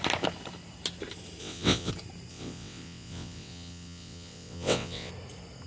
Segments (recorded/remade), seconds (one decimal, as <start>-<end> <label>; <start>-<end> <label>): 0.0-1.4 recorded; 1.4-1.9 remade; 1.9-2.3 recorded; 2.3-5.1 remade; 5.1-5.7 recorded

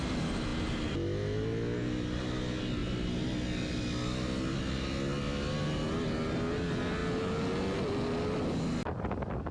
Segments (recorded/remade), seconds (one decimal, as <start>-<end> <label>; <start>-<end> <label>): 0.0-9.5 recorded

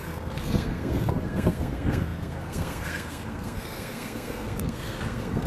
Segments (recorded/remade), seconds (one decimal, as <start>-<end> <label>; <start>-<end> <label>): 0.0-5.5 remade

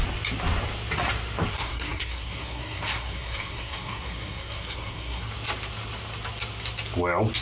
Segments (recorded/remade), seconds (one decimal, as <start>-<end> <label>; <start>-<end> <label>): 0.0-1.5 recorded; 1.5-5.2 remade; 5.2-7.4 recorded

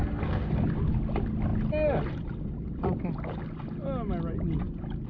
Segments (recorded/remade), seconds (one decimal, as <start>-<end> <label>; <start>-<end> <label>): 0.0-0.5 remade; 0.5-5.1 recorded

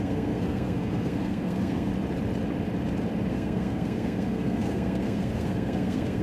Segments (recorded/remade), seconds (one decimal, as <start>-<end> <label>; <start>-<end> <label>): 0.0-1.9 remade; 1.9-3.3 recorded; 3.3-6.2 remade